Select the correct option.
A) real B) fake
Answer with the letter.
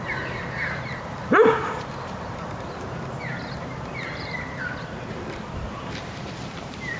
B